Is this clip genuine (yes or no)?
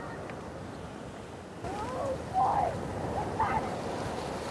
yes